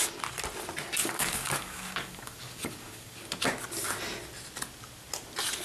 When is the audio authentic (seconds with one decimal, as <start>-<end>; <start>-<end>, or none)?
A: 0.0-1.0; 3.3-5.6